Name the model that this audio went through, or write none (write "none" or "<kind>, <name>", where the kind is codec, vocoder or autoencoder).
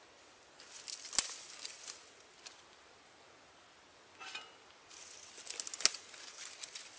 none